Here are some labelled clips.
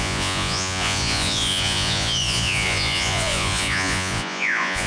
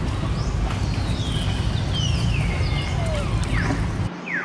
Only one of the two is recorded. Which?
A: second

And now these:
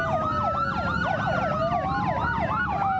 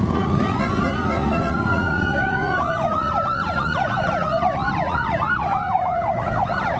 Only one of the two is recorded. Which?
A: first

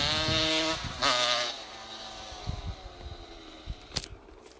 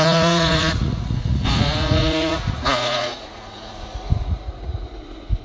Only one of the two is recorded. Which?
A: first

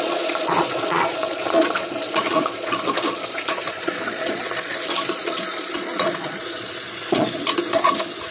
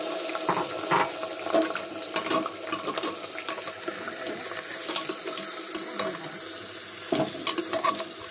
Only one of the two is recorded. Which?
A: second